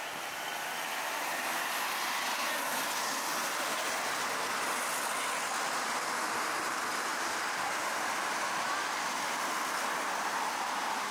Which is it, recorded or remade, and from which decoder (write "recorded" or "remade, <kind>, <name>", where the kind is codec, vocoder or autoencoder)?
recorded